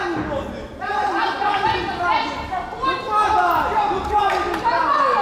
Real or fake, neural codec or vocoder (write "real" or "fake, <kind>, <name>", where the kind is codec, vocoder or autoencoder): real